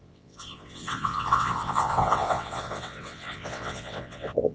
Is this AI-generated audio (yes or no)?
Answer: yes